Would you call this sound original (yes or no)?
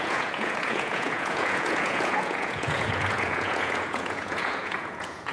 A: no